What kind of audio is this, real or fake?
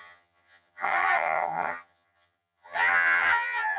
fake